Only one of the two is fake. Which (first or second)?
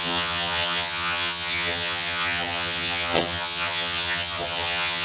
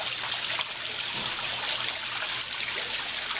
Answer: first